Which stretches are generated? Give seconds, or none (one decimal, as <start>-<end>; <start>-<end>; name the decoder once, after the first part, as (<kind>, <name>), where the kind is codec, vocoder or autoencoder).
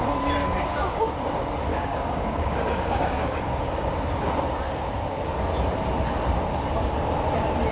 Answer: 0.4-1.1 (codec, DAC); 1.7-3.6